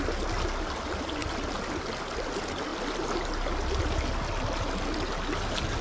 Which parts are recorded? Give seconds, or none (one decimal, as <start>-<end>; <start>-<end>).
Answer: 0.0-1.2; 1.9-5.8